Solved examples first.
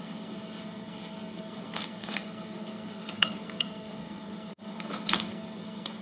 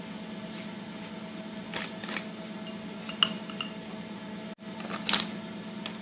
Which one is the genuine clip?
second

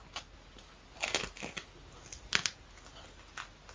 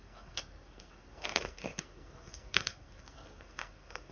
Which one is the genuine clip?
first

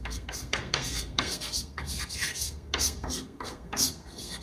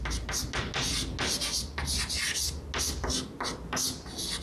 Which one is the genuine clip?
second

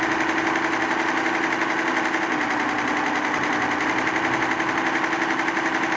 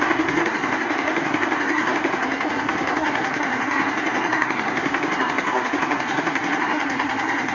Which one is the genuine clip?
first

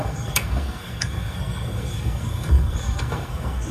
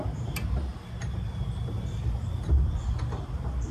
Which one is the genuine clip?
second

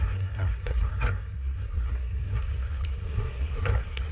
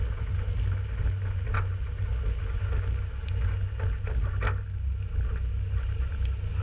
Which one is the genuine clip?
second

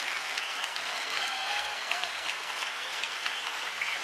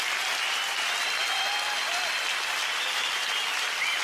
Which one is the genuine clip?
second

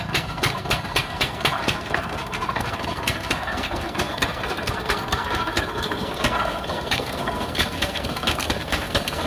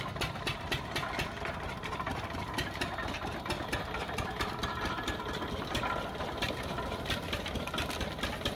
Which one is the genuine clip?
second